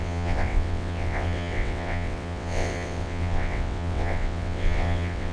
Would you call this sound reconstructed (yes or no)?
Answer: yes